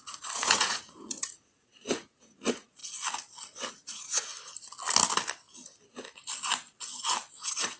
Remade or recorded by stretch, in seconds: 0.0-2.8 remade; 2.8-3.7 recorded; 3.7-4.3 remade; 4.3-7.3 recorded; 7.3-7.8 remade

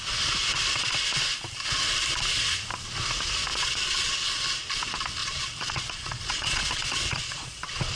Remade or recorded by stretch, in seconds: 0.0-3.5 recorded; 3.5-4.3 remade; 4.3-5.2 recorded; 5.2-7.9 remade

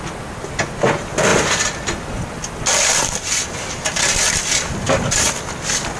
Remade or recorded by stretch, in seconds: 0.0-6.0 recorded

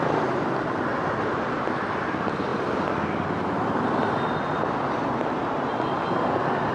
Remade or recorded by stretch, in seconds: 0.0-6.7 recorded